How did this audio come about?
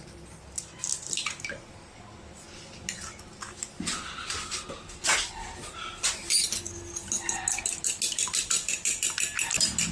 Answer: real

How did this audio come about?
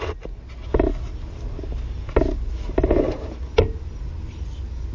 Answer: real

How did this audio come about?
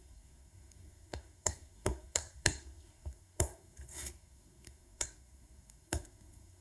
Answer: fake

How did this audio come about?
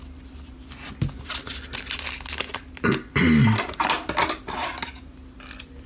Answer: real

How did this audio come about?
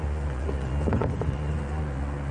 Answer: fake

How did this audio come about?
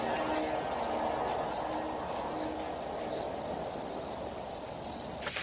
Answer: real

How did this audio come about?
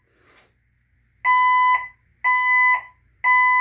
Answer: real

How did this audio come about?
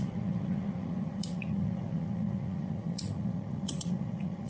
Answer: fake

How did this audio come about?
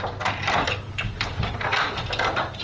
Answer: fake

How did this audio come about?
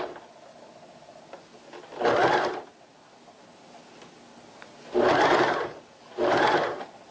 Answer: real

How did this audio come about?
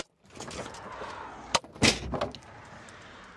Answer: real